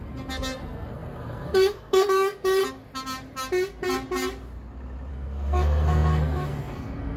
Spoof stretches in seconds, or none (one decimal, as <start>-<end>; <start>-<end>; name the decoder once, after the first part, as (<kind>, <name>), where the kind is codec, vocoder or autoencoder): 0.0-2.6 (codec, SNAC); 5.1-7.2